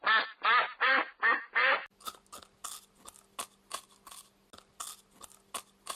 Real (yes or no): yes